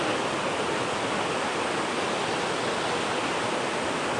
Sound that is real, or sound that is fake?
real